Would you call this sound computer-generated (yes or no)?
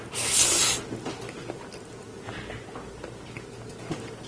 no